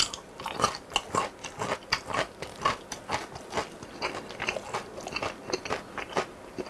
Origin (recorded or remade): recorded